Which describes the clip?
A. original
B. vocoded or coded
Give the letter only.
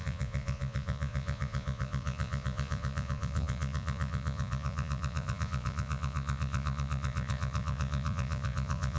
B